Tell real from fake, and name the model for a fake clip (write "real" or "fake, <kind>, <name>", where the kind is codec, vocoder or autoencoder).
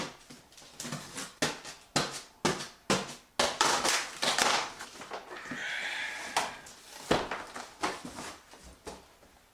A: real